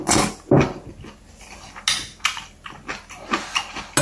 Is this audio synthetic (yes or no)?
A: no